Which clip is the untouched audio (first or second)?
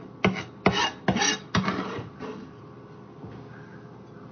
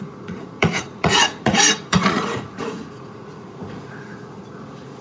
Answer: first